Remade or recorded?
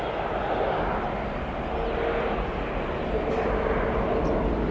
recorded